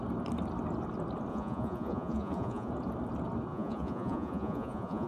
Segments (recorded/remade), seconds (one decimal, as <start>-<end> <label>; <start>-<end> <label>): 0.0-1.3 recorded; 1.3-2.7 remade; 2.7-3.5 recorded; 3.5-5.1 remade